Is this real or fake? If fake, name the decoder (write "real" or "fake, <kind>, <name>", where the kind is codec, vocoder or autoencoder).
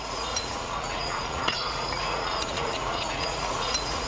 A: fake, vocoder, Vocos